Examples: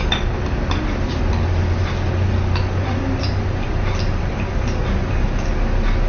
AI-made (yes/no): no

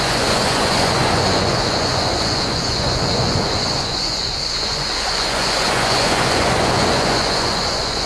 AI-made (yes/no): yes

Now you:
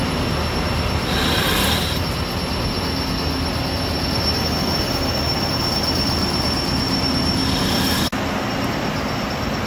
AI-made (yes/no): no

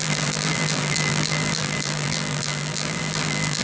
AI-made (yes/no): yes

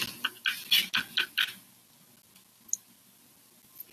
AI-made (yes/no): no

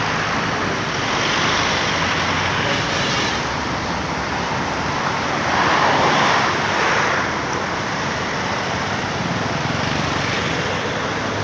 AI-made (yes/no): no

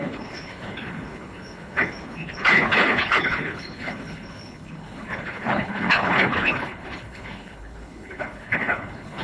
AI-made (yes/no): yes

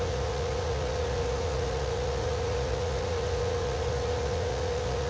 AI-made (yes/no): yes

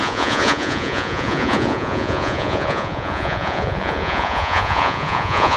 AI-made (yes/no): yes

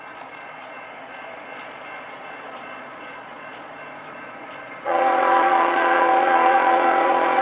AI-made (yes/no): yes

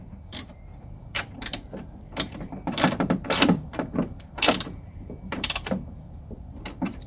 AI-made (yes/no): yes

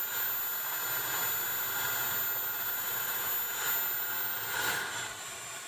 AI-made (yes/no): no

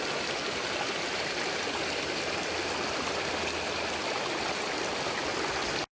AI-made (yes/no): no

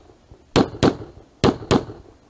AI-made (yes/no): no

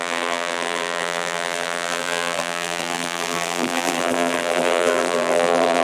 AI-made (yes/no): yes